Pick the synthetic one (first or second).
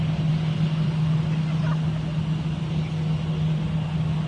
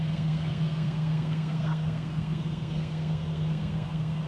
second